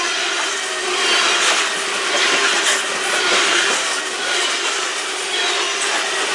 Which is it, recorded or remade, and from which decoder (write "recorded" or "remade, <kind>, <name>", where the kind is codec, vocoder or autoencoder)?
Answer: recorded